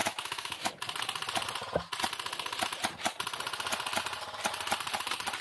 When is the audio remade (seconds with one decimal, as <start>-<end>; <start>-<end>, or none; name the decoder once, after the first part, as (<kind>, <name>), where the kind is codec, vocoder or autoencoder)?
0.0-0.7 (autoencoder, DAC-VAE)